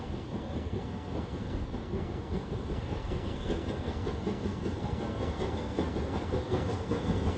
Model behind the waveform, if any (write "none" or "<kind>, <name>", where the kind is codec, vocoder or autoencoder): codec, SNAC